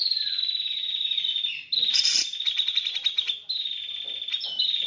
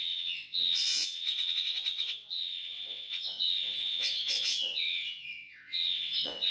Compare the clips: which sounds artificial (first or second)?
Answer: second